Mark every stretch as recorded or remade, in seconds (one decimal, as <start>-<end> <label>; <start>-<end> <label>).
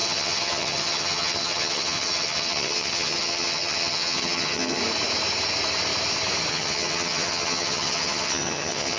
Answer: 0.0-4.8 remade; 4.8-6.5 recorded; 6.5-9.0 remade